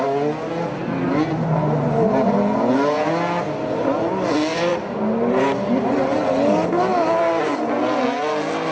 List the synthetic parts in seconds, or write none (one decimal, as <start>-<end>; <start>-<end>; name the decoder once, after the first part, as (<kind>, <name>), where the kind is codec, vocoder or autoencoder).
none